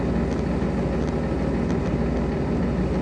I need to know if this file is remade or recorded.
recorded